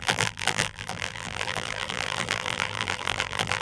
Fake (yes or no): yes